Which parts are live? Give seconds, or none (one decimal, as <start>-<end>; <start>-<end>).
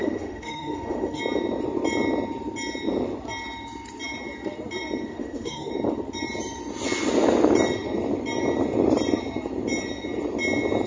1.2-5.1; 5.7-10.9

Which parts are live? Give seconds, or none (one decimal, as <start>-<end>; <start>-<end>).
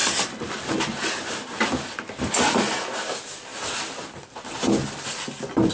0.0-3.5